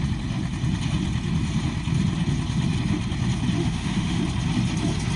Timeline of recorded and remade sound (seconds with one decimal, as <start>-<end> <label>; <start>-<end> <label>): 0.0-3.6 recorded; 3.6-4.2 remade; 4.2-5.2 recorded